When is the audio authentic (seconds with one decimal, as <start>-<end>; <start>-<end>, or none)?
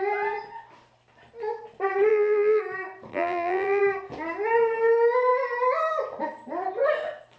0.0-2.1; 2.6-3.1; 3.8-7.4